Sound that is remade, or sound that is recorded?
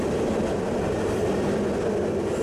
recorded